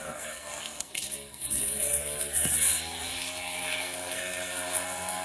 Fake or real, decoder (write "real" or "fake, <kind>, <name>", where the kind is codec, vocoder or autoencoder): fake, codec, SNAC